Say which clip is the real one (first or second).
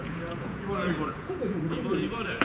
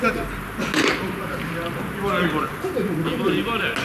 second